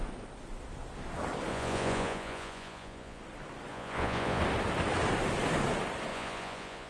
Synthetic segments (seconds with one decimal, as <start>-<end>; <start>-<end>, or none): 1.5-3.2; 3.7-4.4; 6.1-6.9